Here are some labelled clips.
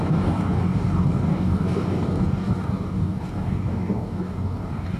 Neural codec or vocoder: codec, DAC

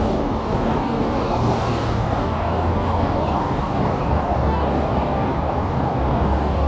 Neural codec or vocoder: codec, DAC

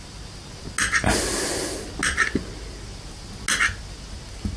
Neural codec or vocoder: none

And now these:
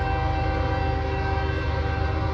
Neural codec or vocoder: none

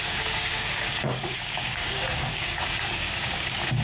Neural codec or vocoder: codec, DAC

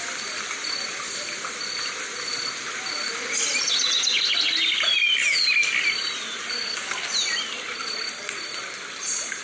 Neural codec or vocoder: none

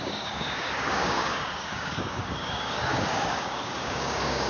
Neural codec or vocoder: codec, DAC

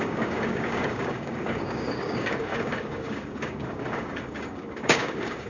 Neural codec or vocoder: codec, DAC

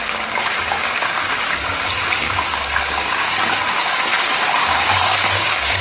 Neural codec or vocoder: codec, DAC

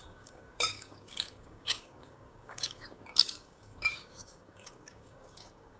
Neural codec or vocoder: codec, DAC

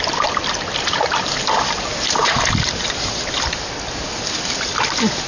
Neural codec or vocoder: none